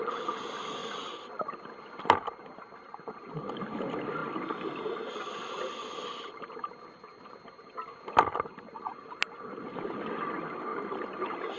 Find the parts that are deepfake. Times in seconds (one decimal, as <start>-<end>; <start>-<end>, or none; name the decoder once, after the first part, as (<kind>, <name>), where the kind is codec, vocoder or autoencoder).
0.8-1.5 (vocoder, BigVGAN v2); 10.7-11.2